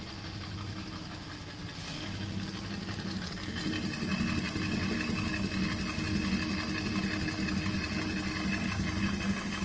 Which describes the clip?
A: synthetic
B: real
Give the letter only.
B